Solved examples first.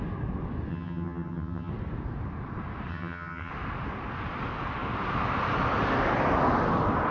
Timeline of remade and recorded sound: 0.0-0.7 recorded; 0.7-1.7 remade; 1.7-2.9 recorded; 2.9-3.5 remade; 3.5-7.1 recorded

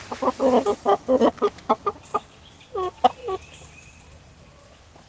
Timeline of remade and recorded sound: 0.0-1.2 recorded; 1.2-1.7 remade; 1.7-2.1 recorded; 2.1-2.7 remade; 2.7-3.2 recorded; 3.2-4.0 remade; 4.0-5.1 recorded

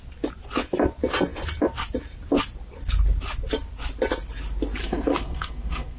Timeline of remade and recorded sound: 0.0-4.8 recorded; 4.8-6.0 remade

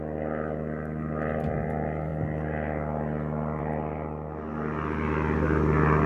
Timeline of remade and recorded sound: 0.0-6.1 recorded

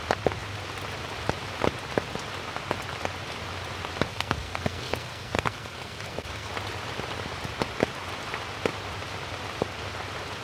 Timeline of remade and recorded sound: 0.0-4.1 recorded; 4.1-6.5 remade; 6.5-10.4 recorded